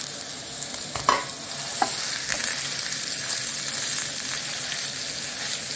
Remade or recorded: recorded